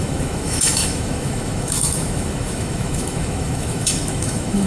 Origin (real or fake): fake